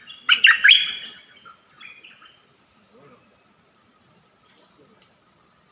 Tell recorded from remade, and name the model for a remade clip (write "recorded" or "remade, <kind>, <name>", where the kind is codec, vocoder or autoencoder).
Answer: recorded